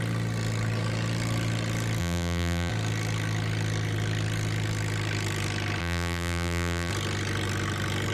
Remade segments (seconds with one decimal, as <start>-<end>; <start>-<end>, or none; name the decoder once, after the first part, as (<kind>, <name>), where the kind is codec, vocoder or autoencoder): 2.0-2.7 (vocoder, BigVGAN v2); 5.8-6.9